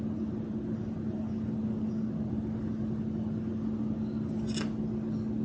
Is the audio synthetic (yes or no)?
no